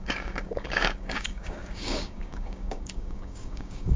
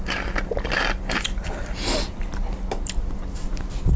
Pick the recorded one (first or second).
second